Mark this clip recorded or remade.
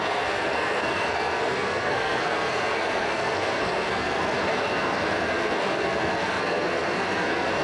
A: remade